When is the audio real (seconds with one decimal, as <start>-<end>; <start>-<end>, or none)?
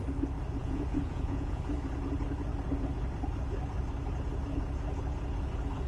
0.0-0.6; 1.6-5.9